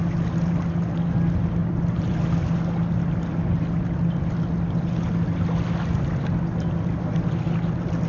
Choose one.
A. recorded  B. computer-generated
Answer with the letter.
A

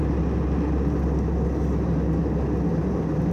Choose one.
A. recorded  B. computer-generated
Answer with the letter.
A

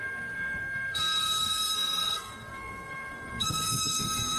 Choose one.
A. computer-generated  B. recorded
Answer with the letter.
A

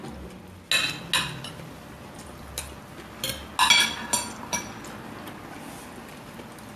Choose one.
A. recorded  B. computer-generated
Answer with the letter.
A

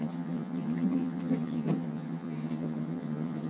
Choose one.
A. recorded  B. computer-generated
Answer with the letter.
B